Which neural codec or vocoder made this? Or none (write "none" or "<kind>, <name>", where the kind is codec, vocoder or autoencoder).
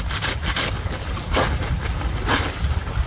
none